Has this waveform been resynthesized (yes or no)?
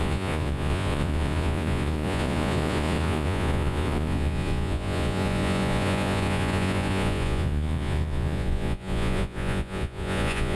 yes